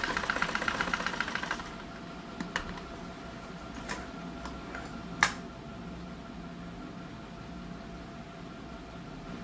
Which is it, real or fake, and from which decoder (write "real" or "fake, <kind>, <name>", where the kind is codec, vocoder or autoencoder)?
real